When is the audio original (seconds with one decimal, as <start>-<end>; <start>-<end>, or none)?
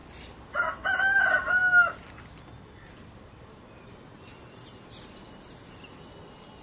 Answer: 0.0-6.6